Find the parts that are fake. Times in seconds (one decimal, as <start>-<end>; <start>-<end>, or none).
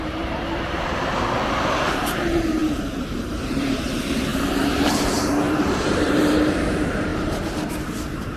0.0-8.4